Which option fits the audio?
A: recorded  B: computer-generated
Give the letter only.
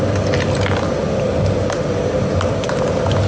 A